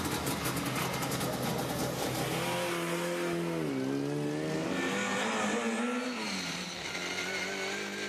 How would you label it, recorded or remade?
recorded